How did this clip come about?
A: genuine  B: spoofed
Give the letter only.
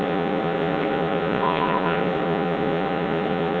B